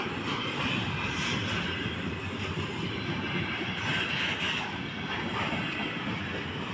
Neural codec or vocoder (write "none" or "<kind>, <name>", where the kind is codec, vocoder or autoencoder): none